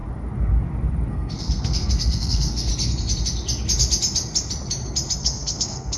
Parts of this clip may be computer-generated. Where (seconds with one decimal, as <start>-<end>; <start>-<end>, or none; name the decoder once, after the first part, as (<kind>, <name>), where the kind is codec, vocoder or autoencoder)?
1.1-2.7 (codec, SNAC); 5.2-6.0